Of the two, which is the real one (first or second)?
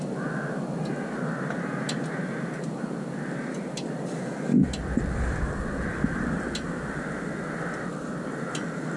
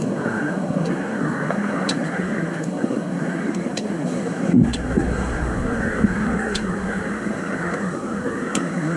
first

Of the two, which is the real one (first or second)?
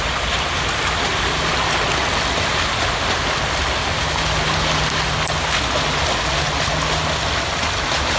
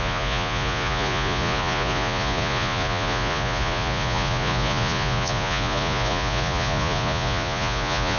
first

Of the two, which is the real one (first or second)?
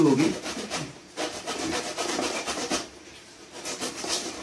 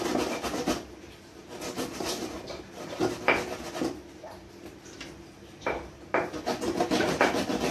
second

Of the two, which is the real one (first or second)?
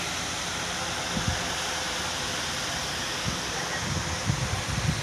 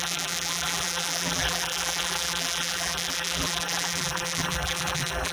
first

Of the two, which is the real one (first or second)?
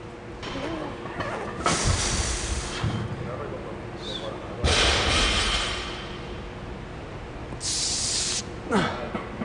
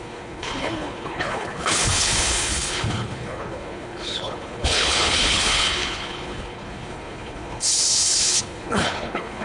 first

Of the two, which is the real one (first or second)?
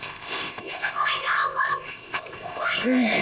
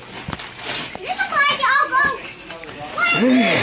second